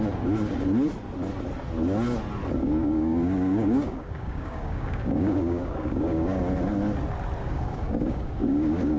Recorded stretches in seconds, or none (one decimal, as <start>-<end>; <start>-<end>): 0.0-2.6; 6.4-7.4